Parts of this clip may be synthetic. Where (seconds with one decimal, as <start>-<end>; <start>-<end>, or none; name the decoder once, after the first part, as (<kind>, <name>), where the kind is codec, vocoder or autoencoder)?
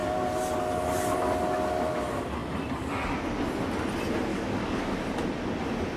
4.3-4.9 (codec, DAC)